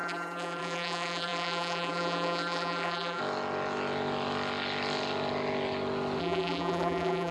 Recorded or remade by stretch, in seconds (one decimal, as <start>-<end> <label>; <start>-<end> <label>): 0.0-3.2 remade; 3.2-6.2 recorded; 6.2-7.3 remade